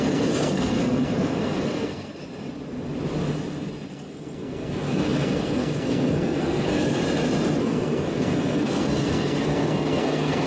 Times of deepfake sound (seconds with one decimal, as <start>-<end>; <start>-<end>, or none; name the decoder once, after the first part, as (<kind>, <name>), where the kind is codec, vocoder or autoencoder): 0.0-2.2 (codec, SNAC); 3.9-7.0; 7.6-10.5